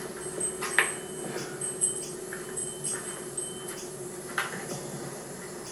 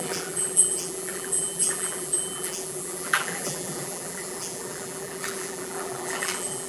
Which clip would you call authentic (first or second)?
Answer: first